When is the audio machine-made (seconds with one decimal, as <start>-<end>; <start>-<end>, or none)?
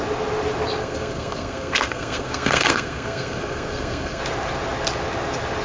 0.8-4.2